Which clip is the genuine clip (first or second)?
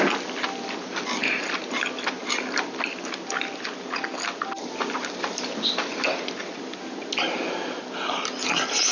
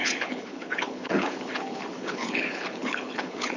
first